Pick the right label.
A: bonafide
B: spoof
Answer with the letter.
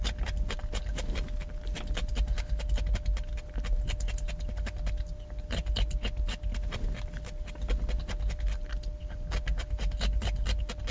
A